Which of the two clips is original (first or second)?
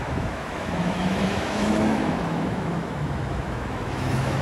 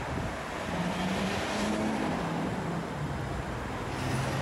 second